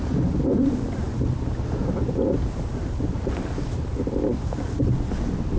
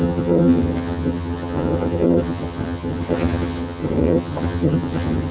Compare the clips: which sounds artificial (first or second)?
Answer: second